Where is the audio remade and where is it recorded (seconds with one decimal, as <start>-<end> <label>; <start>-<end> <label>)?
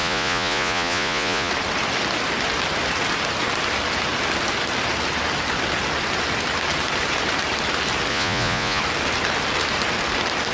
0.0-1.5 remade; 1.5-8.1 recorded; 8.1-8.8 remade; 8.8-10.5 recorded